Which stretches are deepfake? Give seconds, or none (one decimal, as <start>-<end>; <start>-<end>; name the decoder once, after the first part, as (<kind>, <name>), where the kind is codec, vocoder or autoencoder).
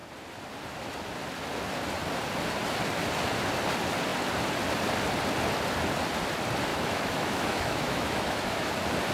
6.7-8.7 (autoencoder, DAC-VAE)